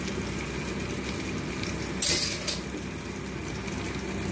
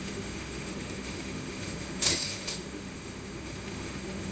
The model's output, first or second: second